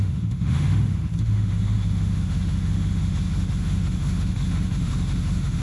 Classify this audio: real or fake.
fake